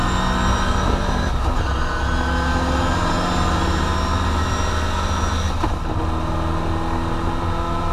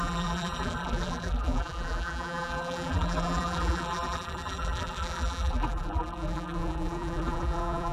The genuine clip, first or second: first